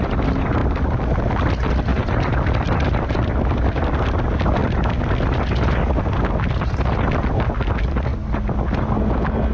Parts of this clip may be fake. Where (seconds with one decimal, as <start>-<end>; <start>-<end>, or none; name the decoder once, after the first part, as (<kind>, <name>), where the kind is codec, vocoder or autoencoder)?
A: 0.6-1.2 (vocoder, BigVGAN v2); 1.9-3.5